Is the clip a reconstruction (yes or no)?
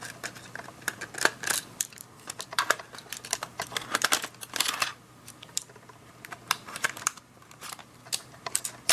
yes